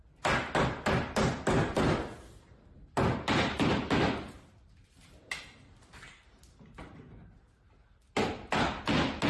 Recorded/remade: recorded